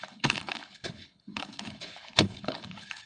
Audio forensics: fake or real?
fake